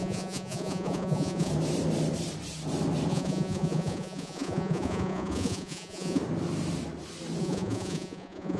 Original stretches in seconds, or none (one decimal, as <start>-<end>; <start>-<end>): 1.5-3.1; 6.2-7.4